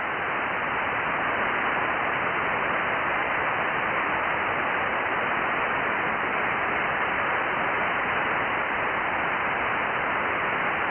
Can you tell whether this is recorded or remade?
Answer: recorded